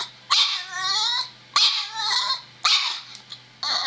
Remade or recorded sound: recorded